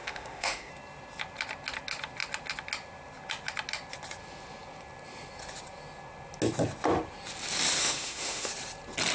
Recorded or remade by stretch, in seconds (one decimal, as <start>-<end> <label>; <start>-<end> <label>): 0.0-0.7 remade; 0.7-7.8 recorded; 7.8-8.5 remade; 8.5-9.1 recorded